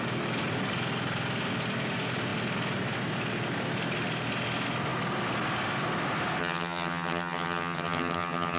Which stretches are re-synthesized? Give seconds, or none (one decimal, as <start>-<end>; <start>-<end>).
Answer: 6.4-8.6